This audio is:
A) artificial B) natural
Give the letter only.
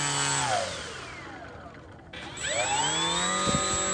B